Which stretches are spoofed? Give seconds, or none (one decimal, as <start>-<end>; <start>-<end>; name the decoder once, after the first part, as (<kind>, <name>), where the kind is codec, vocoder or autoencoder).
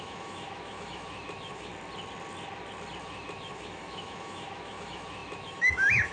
0.0-1.7 (autoencoder, DAC-VAE); 3.0-6.1